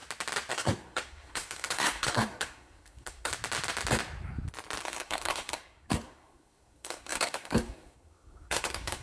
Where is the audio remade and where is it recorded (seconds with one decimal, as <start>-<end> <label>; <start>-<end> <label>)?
0.0-0.5 recorded; 0.5-3.3 remade; 3.3-4.8 recorded; 4.8-9.0 remade